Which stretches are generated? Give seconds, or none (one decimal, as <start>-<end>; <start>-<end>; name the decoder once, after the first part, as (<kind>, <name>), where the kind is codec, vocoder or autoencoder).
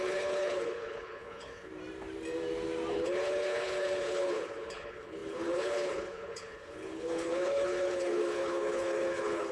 0.0-1.7 (codec, HILCodec); 2.9-9.5